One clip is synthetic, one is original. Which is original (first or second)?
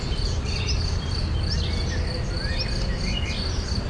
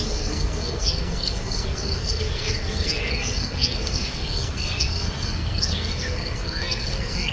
first